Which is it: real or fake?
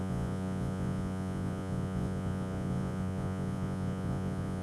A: fake